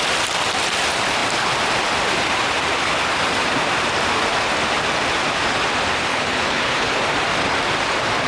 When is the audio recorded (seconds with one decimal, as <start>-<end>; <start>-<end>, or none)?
0.0-6.1; 7.0-8.3